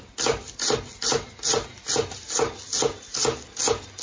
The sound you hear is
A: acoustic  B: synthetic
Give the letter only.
A